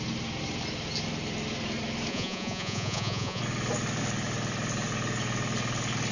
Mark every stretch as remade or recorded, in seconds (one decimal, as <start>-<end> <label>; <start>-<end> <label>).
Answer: 0.0-2.1 recorded; 2.1-3.4 remade; 3.4-6.1 recorded